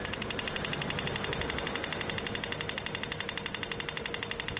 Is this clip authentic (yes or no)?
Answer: yes